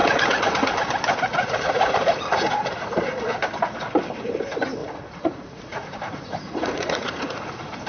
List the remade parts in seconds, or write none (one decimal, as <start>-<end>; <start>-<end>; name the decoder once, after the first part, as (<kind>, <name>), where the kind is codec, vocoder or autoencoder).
0.0-0.7 (vocoder, Vocos); 1.3-2.7; 4.8-7.5